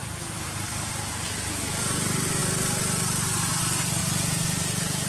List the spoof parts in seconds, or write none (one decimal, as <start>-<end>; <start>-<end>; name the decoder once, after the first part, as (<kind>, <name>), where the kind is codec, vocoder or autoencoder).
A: 4.0-5.1 (vocoder, Vocos)